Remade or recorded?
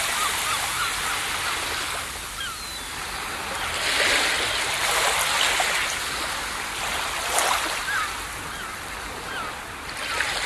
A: recorded